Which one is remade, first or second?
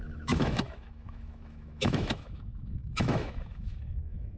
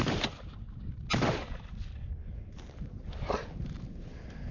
first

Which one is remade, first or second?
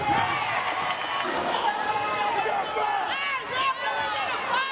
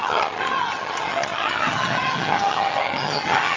second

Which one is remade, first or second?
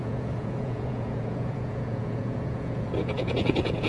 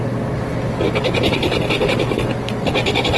first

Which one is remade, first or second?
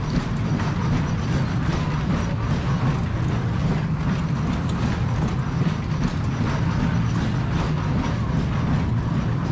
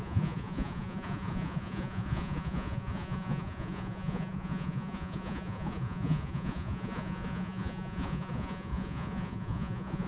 second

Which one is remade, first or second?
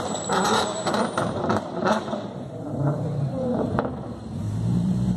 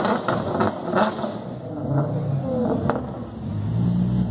first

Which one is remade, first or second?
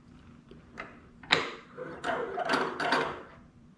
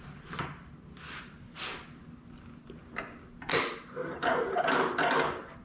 first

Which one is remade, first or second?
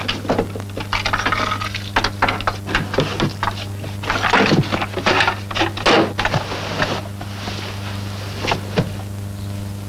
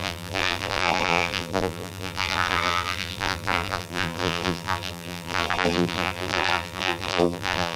second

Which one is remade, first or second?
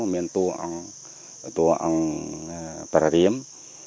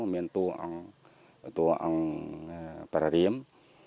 first